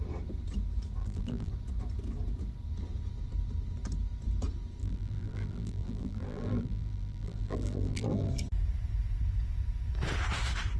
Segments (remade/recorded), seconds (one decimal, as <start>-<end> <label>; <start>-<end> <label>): 0.0-1.0 recorded; 1.0-1.5 remade; 1.5-4.8 recorded; 4.8-8.3 remade; 8.3-10.8 recorded